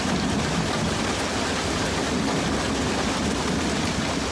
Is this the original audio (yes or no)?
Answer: yes